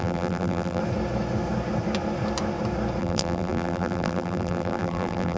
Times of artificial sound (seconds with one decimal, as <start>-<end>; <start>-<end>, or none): 0.0-0.8; 3.0-5.4